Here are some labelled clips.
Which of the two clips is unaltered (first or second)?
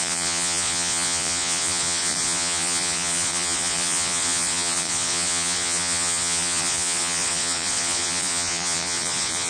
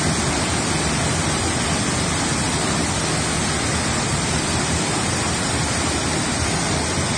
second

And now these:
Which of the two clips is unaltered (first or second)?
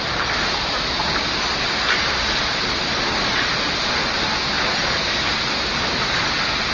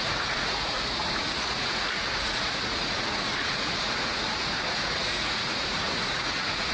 first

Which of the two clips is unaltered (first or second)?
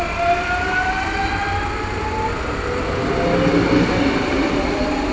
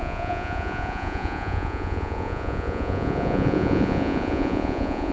first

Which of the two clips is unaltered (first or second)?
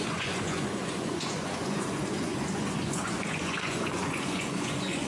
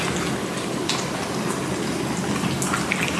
second